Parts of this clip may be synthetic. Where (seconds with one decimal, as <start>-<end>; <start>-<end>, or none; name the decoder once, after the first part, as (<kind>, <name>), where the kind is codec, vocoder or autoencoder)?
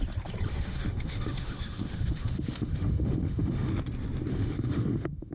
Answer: 0.5-3.7 (autoencoder, DAC-VAE); 4.3-5.3